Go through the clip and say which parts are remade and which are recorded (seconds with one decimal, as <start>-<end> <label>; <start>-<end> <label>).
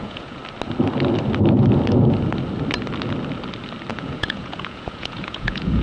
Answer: 0.0-0.4 remade; 0.4-3.9 recorded; 3.9-5.8 remade